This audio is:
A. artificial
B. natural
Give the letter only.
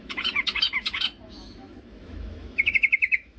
A